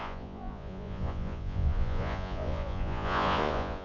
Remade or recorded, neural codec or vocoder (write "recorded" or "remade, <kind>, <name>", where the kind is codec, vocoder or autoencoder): remade, vocoder, Vocos